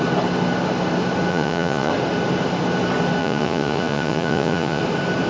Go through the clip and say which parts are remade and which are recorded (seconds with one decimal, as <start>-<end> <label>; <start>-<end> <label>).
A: 0.0-1.3 recorded; 1.3-1.9 remade; 1.9-3.2 recorded; 3.2-4.8 remade; 4.8-5.3 recorded